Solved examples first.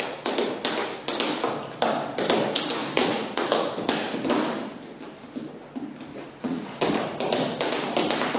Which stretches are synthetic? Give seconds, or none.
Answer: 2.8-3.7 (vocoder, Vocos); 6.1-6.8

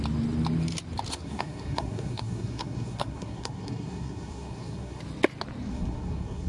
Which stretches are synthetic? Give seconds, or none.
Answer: 1.1-5.0 (codec, SNAC); 5.7-6.5

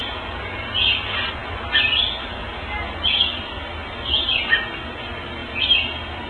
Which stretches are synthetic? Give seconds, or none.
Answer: 0.0-0.7 (vocoder, BigVGAN v2)

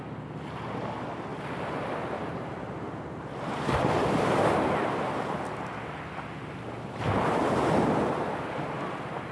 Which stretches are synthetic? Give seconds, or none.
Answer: none

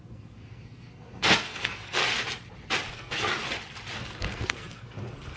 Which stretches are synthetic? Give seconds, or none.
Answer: 0.0-2.0 (codec, SNAC); 2.9-3.3; 4.0-5.4